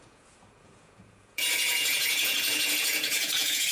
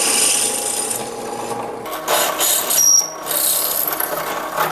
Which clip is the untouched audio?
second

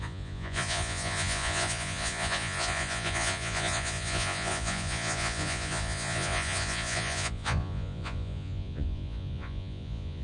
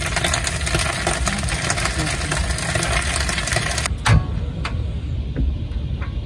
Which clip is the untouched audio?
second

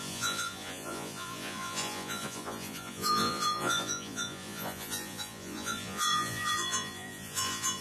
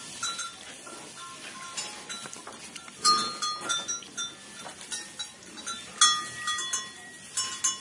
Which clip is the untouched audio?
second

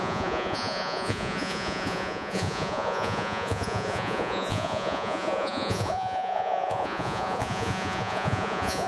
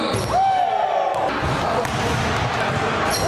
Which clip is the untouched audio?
second